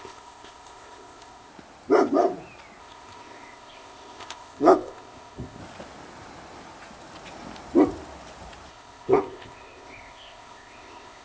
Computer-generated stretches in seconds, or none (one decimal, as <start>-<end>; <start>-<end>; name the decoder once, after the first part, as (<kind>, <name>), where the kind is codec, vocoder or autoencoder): 0.0-1.5 (codec, ZipCodec); 2.8-5.6; 8.7-11.2